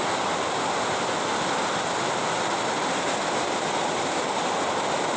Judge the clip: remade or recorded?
recorded